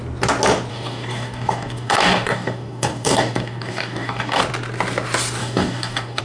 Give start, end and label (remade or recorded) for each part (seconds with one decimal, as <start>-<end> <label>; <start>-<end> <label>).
0.0-0.7 recorded; 0.7-4.4 remade; 4.4-5.4 recorded; 5.4-6.2 remade